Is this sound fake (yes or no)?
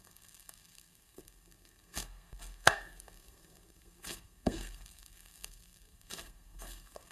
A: yes